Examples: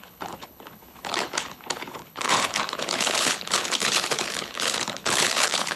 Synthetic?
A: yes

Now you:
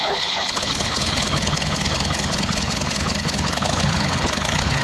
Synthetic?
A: yes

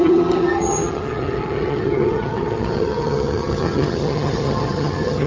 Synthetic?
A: yes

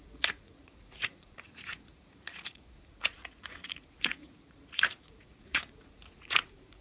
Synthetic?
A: yes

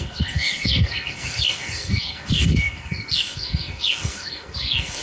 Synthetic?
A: yes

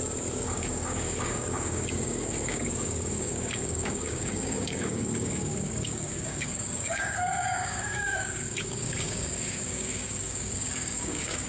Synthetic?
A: yes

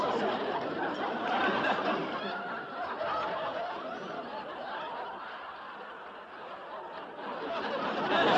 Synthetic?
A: no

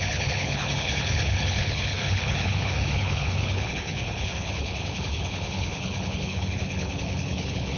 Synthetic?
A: yes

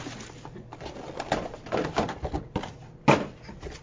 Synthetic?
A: no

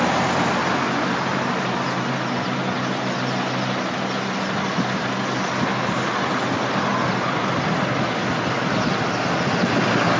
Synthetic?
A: no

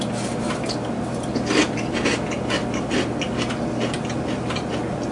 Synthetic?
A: no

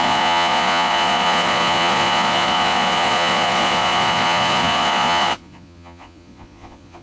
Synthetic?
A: yes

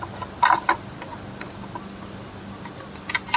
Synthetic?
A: no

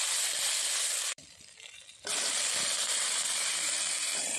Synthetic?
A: yes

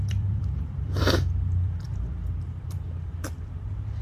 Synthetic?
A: yes